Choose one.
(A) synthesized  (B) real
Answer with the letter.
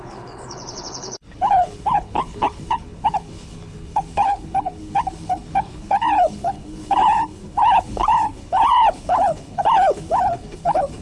A